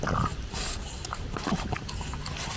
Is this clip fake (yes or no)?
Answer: no